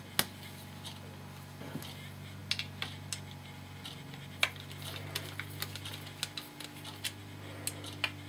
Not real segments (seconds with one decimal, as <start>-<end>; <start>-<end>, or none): none

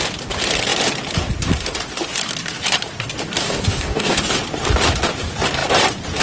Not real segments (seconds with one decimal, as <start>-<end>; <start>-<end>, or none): 3.4-4.2

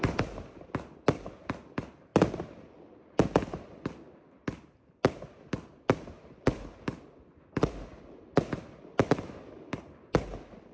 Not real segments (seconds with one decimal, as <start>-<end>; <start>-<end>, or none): none

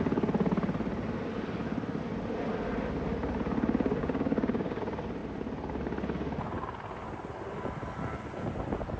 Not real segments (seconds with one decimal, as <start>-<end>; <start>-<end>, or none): 4.0-4.8

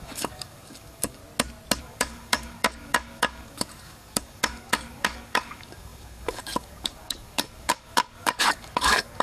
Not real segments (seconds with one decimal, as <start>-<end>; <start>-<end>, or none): 0.0-1.2; 1.8-9.2